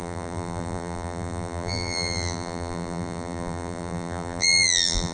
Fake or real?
fake